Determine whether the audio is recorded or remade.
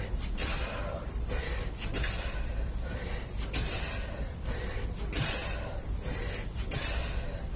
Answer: remade